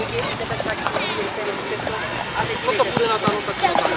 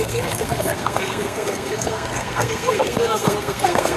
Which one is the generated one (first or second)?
second